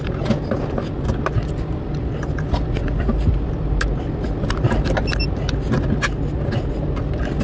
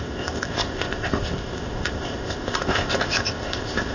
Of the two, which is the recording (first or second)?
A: first